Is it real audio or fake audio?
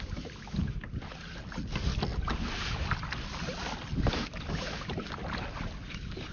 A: real